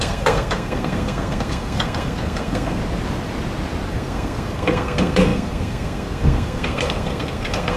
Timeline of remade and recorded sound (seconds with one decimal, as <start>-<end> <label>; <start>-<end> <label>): 0.0-2.8 remade; 2.8-3.9 recorded; 3.9-7.8 remade